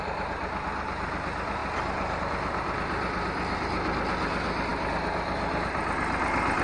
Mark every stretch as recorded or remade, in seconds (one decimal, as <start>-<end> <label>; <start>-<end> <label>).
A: 0.0-6.6 recorded